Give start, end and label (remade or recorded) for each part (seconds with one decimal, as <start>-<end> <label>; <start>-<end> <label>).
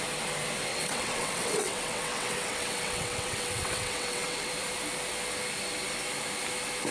0.0-0.7 recorded; 0.7-4.5 remade; 4.5-6.9 recorded